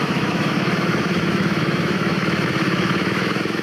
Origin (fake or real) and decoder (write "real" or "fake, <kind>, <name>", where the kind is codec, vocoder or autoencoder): fake, autoencoder, DAC-VAE